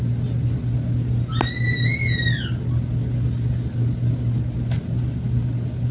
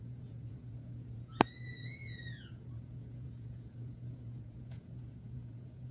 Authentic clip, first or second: first